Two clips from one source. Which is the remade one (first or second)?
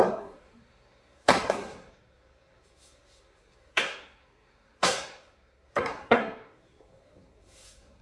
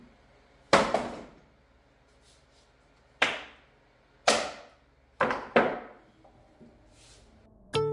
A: first